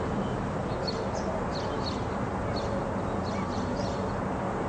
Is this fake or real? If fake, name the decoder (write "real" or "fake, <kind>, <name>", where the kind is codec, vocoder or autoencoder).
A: real